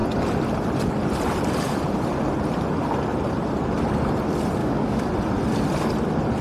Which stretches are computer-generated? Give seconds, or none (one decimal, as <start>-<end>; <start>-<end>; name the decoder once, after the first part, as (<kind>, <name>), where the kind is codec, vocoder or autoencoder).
4.6-5.1 (codec, DAC)